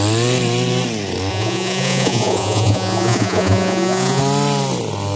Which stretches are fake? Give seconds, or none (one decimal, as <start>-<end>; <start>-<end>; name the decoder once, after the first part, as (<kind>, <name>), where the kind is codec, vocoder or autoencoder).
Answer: 1.3-4.2 (vocoder, Vocos)